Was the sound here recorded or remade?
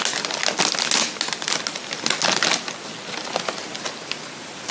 recorded